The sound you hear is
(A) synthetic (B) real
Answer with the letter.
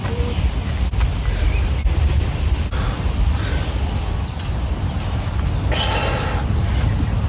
B